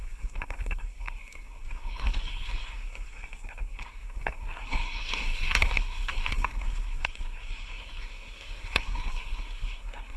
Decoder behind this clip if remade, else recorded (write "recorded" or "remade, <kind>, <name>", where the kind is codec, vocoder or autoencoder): remade, codec, SNAC